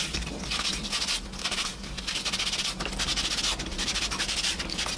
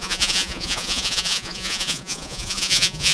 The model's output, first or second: second